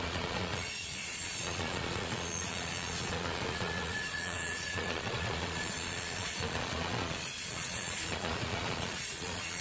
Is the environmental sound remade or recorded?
remade